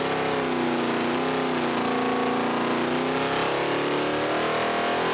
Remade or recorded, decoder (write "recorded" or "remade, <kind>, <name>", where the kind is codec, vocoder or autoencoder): recorded